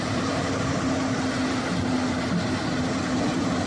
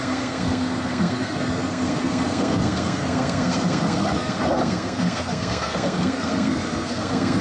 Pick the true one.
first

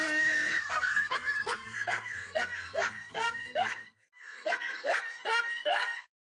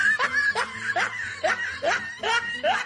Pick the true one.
second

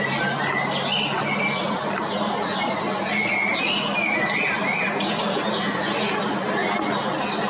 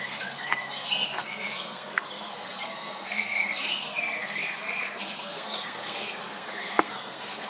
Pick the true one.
first